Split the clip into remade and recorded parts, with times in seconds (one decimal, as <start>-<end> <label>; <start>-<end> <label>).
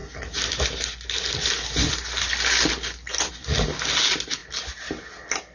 0.0-5.5 recorded